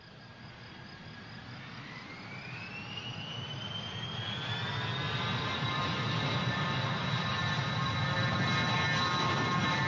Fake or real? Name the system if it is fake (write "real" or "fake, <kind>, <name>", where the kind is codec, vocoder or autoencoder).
real